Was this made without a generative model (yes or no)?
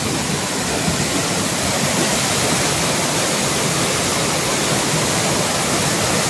yes